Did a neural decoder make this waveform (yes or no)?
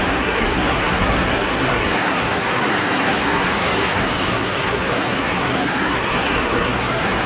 yes